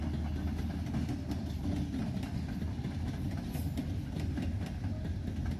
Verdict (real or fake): real